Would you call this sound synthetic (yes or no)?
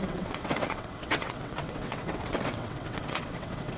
yes